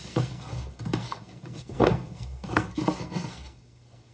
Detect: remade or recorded remade